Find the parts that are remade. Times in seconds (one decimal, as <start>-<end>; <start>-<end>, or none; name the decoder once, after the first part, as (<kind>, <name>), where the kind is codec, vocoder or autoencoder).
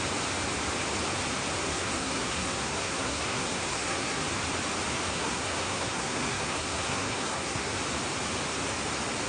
1.7-4.2 (codec, SNAC); 4.9-7.7